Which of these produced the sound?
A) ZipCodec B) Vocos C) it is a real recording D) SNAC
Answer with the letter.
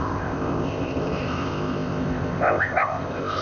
A